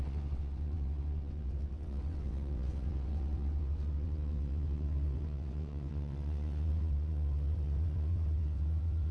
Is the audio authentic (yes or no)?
no